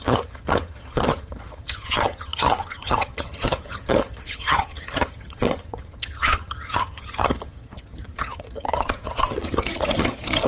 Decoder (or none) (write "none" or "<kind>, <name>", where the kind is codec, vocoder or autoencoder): vocoder, HiFi-GAN